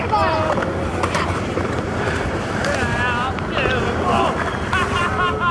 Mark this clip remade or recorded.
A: recorded